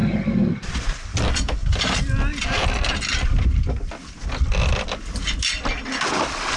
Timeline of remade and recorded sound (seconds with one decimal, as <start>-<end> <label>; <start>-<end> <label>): 0.0-6.6 recorded